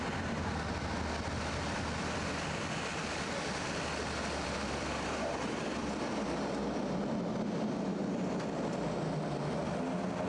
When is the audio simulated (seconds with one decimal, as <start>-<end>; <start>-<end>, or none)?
2.9-7.7